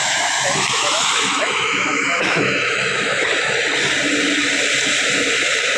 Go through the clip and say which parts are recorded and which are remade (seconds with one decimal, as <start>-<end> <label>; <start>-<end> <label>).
0.0-3.5 remade; 3.5-5.8 recorded